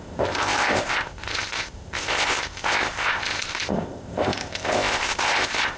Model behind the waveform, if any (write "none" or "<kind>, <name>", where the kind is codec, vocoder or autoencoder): codec, ZipCodec